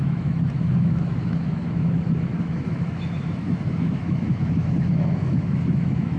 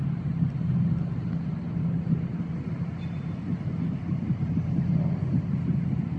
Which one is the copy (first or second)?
first